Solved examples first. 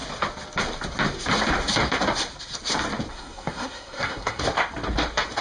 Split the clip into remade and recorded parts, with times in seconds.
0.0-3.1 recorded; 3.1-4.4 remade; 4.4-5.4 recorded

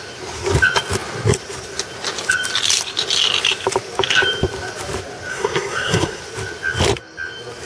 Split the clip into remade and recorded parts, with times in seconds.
0.0-5.3 recorded; 5.3-6.2 remade; 6.2-7.7 recorded

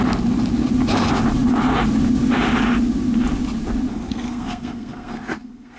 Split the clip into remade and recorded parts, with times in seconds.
0.0-3.9 recorded; 3.9-5.8 remade

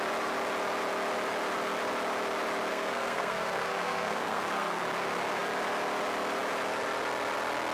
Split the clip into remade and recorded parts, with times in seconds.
0.0-2.7 recorded; 2.7-4.8 remade; 4.8-7.7 recorded

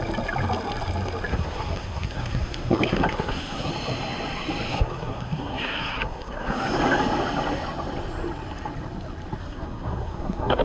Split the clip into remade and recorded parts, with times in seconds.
0.0-1.3 recorded; 1.3-3.7 remade; 3.7-4.7 recorded; 4.7-6.7 remade; 6.7-9.4 recorded; 9.4-10.6 remade

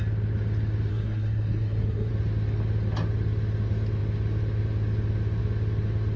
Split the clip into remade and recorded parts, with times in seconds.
0.0-0.9 recorded; 0.9-2.1 remade; 2.1-6.2 recorded